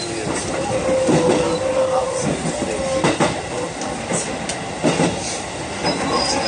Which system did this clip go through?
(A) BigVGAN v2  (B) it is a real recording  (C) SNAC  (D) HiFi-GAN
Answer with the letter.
B